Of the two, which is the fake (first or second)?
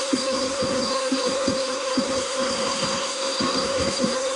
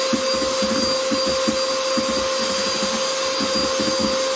first